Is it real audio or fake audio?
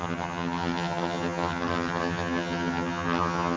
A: fake